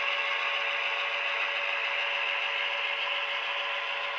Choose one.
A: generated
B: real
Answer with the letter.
B